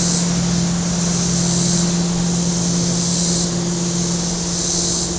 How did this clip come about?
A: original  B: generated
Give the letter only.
A